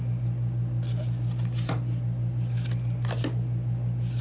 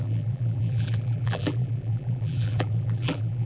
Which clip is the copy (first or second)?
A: second